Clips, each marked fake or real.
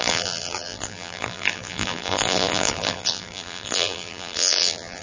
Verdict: fake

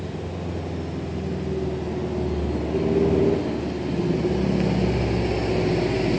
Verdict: real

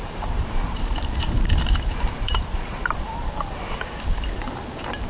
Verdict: fake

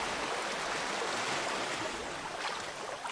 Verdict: real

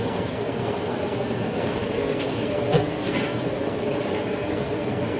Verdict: fake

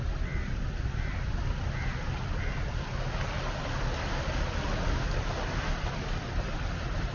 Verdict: real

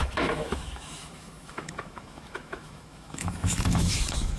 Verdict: fake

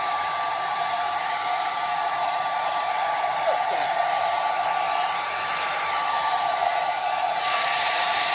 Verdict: fake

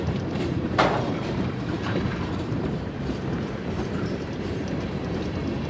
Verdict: fake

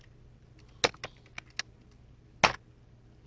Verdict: real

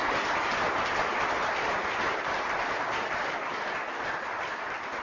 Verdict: real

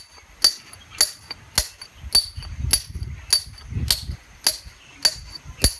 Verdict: real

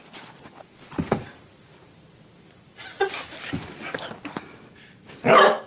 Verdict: real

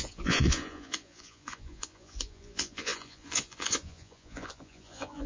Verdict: fake